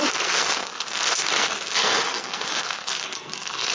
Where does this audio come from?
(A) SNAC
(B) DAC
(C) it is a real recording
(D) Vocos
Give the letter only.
A